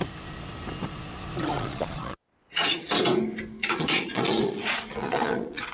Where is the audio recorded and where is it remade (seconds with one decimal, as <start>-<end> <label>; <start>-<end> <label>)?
0.0-1.5 recorded; 1.5-2.9 remade; 2.9-3.6 recorded; 3.6-5.7 remade